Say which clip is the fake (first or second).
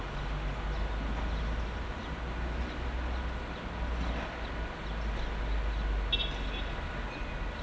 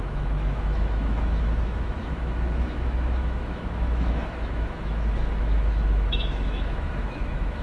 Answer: second